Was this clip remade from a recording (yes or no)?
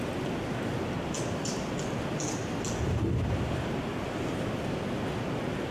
no